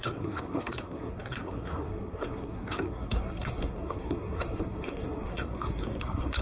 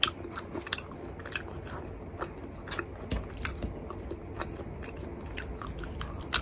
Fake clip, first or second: first